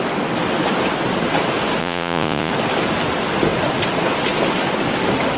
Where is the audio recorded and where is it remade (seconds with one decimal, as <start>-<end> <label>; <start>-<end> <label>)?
0.0-1.8 recorded; 1.8-2.5 remade; 2.5-5.4 recorded